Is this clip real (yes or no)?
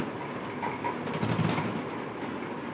yes